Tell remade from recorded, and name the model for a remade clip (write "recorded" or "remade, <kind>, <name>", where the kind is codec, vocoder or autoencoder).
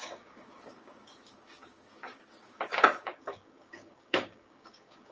remade, codec, DAC